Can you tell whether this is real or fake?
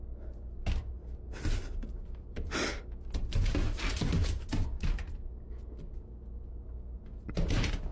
real